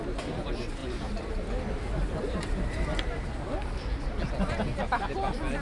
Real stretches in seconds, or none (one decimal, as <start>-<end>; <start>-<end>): 0.0-0.8; 4.2-5.6

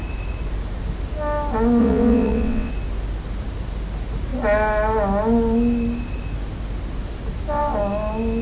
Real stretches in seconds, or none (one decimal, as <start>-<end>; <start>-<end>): 0.0-1.8; 2.7-8.4